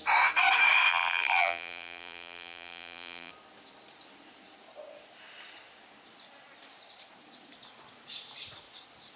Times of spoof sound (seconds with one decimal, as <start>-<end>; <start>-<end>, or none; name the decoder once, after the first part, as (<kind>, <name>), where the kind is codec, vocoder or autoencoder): 0.9-3.3 (vocoder, BigVGAN v2)